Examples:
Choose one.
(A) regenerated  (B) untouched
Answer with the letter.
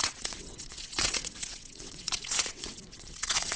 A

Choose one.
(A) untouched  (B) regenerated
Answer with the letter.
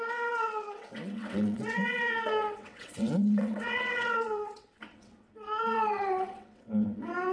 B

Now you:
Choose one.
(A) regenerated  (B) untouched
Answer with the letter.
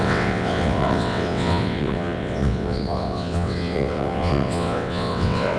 A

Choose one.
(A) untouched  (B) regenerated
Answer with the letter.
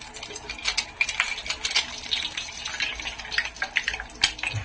A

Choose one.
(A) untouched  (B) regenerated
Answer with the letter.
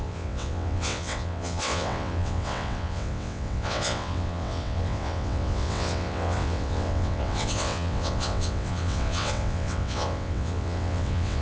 B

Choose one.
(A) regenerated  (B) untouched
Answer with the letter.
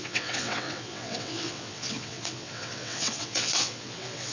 A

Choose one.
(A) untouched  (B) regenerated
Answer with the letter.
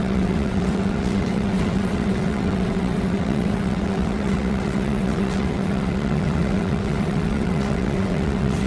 B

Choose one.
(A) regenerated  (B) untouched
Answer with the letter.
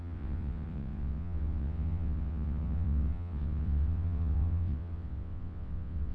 A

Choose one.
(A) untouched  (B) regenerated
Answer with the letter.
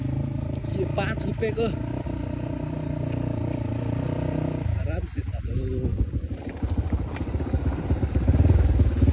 A